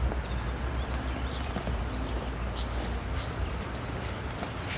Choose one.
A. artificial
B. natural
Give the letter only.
B